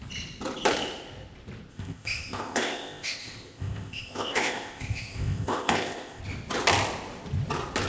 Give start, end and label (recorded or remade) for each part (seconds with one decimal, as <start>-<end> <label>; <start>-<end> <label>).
0.0-1.7 recorded; 1.7-6.2 remade; 6.2-7.9 recorded